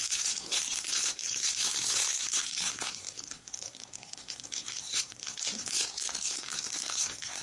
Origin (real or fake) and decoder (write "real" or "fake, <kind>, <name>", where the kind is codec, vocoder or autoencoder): fake, codec, SNAC